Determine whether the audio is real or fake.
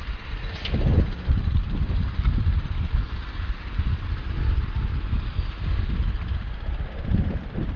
real